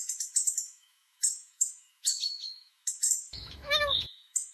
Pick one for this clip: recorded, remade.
remade